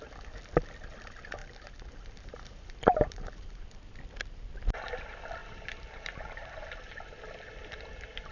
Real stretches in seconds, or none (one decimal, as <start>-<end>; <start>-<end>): 0.0-1.4; 3.9-5.4; 7.2-8.3

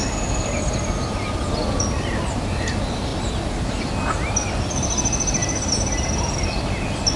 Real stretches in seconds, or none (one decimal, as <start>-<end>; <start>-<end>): 0.0-7.2

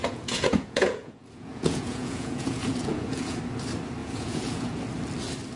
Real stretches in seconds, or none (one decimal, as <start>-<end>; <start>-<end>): 3.4-4.0; 4.8-5.6

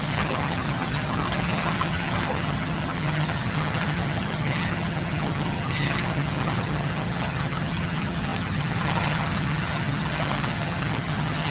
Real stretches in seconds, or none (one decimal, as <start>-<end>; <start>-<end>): none

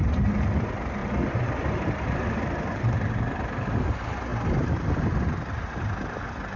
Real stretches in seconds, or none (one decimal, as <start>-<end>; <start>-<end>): 0.0-1.0; 3.8-6.6

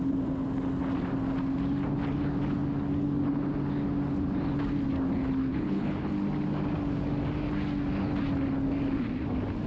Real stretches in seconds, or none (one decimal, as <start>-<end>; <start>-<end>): 0.0-5.5; 6.1-9.7

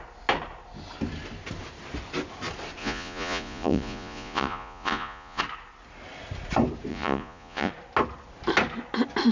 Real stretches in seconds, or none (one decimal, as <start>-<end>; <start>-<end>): 0.0-2.8; 5.4-6.9; 7.7-9.3